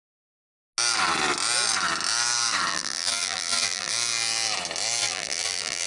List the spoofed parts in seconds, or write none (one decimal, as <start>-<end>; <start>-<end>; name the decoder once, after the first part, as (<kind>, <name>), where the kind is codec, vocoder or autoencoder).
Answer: 2.7-3.9 (vocoder, BigVGAN v2); 5.0-5.9